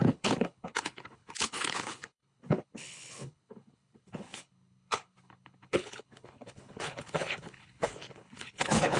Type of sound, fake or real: fake